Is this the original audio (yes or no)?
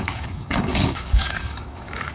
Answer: no